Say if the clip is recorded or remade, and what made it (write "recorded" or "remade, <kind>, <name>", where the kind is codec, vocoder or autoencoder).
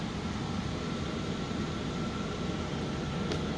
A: recorded